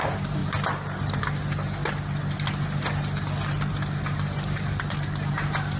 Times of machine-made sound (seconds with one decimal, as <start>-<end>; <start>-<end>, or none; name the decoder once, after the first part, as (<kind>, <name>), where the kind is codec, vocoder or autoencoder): none